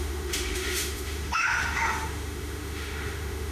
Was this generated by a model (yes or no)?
yes